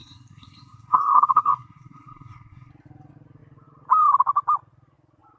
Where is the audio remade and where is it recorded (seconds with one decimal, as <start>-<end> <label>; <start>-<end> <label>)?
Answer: 0.0-2.7 remade; 2.7-5.4 recorded